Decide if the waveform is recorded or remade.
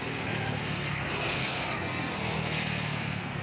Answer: remade